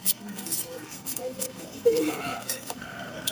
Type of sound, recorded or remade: remade